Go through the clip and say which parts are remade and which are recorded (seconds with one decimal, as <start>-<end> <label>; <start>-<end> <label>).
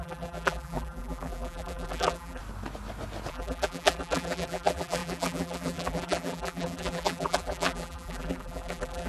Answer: 0.0-2.4 remade; 2.4-3.3 recorded; 3.3-9.1 remade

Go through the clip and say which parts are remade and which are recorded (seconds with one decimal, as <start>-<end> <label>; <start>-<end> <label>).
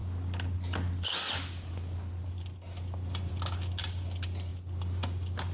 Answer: 0.0-5.5 recorded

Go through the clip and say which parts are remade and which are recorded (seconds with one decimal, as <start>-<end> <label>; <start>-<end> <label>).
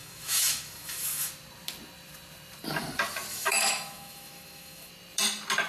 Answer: 0.0-1.3 remade; 1.3-3.3 recorded; 3.3-4.9 remade; 4.9-5.7 recorded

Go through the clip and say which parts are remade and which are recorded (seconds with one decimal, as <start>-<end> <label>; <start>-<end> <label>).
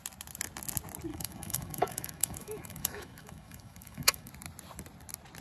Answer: 0.0-1.1 recorded; 1.1-4.3 remade; 4.3-5.4 recorded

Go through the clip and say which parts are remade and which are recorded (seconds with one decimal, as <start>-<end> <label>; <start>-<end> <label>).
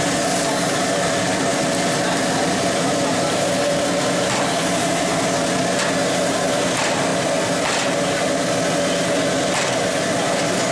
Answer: 0.0-10.7 recorded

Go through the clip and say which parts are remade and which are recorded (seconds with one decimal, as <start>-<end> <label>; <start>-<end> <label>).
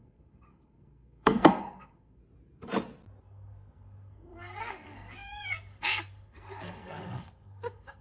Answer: 0.0-2.2 remade; 2.2-3.2 recorded; 3.2-8.0 remade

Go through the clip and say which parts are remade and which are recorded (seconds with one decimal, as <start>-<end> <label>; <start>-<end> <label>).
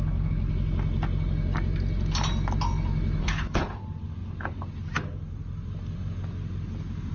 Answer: 0.0-3.2 recorded; 3.2-3.8 remade; 3.8-7.1 recorded